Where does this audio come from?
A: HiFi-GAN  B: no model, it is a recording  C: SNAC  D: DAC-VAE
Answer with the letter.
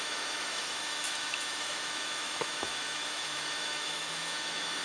D